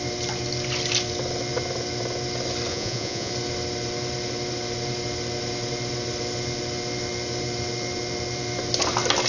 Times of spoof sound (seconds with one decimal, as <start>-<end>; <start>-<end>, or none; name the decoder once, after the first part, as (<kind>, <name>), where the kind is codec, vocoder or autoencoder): 2.7-3.3 (vocoder, Vocos)